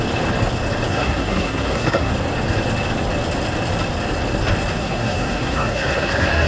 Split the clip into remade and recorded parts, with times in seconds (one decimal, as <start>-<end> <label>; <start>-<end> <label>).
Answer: 0.0-0.9 recorded; 0.9-2.1 remade; 2.1-4.8 recorded; 4.8-6.5 remade